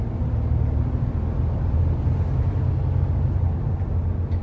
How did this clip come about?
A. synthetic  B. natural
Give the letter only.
B